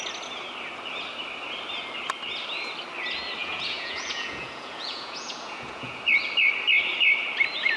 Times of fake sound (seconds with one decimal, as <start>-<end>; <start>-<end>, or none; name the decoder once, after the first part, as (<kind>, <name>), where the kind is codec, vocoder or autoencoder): 3.4-6.0 (vocoder, Vocos)